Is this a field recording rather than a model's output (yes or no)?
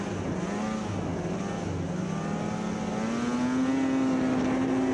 yes